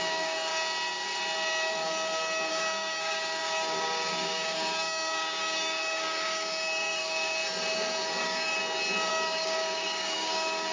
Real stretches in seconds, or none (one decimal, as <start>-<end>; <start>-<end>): 0.5-2.5; 7.4-8.2; 8.6-9.1

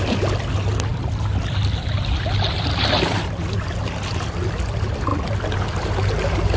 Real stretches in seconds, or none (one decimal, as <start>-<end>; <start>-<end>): 0.0-6.6

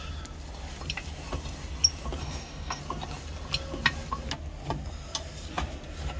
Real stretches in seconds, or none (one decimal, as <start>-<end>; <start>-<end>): 0.0-2.2; 2.8-6.2

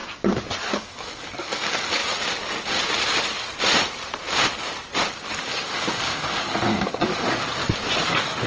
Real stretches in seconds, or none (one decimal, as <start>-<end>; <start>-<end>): 0.0-0.7; 2.0-5.3; 7.6-8.1

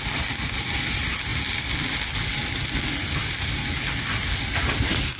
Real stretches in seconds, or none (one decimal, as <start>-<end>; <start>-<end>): 0.0-5.2

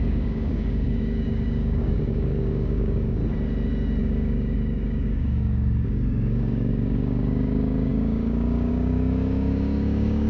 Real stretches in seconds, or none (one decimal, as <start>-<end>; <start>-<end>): 3.2-4.0

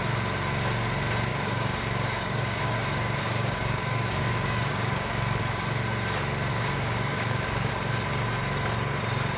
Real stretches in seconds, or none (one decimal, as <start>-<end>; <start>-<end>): 0.0-1.3; 5.4-6.5; 7.7-9.4

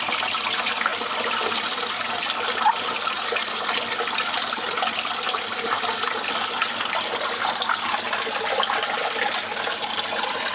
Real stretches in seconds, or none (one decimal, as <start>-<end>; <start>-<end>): 0.0-10.5